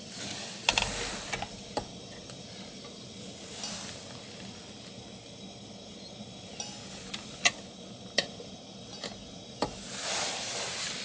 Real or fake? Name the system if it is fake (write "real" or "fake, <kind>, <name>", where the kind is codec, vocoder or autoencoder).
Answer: real